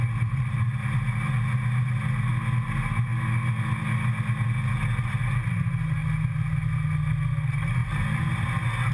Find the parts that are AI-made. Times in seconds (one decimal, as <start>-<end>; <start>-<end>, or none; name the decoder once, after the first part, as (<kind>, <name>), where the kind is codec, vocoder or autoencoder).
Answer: none